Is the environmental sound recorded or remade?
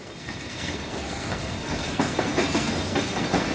remade